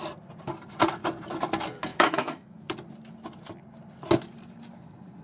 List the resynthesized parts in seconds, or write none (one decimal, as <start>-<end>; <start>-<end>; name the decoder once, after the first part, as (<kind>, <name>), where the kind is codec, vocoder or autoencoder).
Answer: 1.9-2.6 (autoencoder, DAC-VAE)